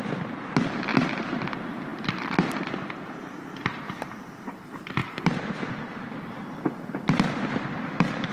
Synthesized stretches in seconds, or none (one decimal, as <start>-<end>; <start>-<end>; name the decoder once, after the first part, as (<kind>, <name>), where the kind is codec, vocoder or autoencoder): 0.0-8.3 (vocoder, BigVGAN v2)